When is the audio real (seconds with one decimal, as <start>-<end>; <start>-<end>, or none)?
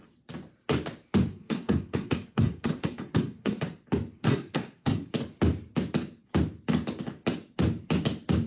0.0-1.3; 3.6-4.2; 5.1-8.5